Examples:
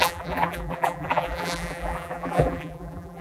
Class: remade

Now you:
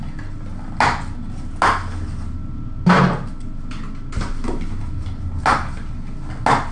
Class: recorded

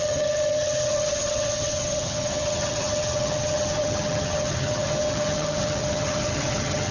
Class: remade